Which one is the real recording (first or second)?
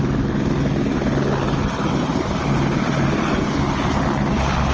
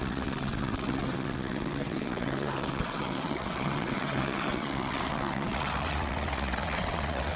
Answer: first